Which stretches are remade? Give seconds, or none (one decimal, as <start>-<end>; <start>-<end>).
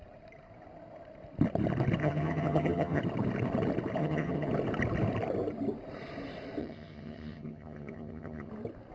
2.0-3.0; 4.0-4.5; 6.6-8.5